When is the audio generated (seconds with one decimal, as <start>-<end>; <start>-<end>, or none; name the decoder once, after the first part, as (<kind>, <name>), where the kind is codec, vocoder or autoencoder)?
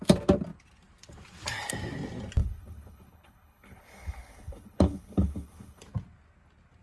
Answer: 2.4-5.8 (codec, HILCodec)